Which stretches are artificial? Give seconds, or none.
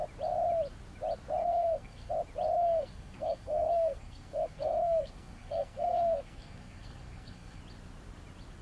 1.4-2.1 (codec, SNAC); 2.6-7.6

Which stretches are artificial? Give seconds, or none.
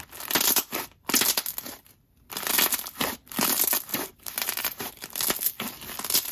3.9-4.9 (vocoder, BigVGAN v2)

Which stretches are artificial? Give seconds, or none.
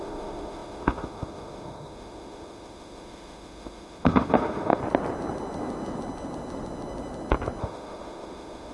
0.0-4.8 (autoencoder, DAC-VAE); 7.6-8.7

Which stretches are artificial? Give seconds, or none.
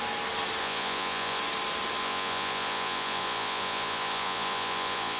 0.6-1.4 (vocoder, Vocos); 2.0-5.2